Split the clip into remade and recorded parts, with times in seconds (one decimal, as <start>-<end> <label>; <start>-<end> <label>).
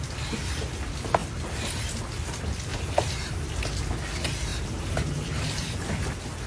0.0-2.7 recorded; 2.7-3.5 remade; 3.5-4.5 recorded; 4.5-6.0 remade; 6.0-6.5 recorded